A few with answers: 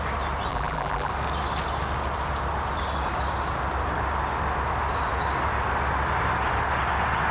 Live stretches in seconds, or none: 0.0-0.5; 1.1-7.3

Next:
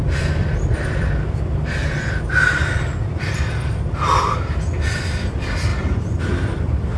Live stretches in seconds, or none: 1.8-4.9

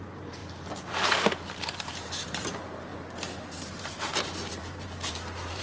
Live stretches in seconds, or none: 0.4-1.5; 2.9-3.8

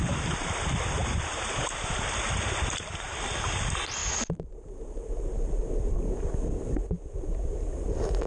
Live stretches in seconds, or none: 0.0-1.0; 2.5-4.0; 5.1-8.3

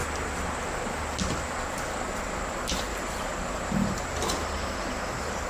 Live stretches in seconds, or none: 0.0-2.9; 4.8-5.5

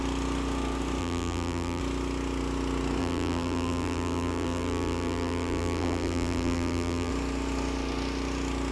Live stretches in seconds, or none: 0.0-1.0; 1.8-3.0; 7.1-8.7

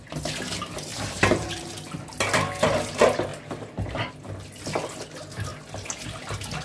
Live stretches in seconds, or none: 0.0-0.9; 1.7-6.6

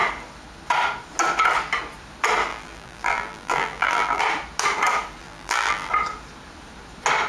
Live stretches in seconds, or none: 0.0-2.5; 4.2-5.2; 5.9-7.3